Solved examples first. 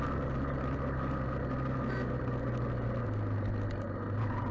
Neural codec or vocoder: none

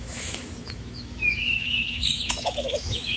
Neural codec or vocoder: autoencoder, DAC-VAE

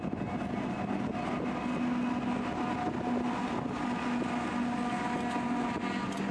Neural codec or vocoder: none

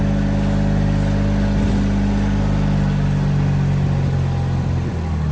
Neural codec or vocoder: none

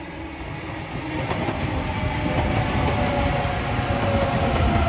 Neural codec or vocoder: none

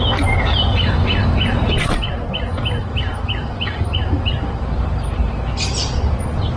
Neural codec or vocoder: none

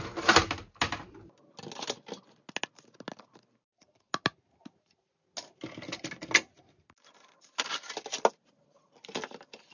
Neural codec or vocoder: none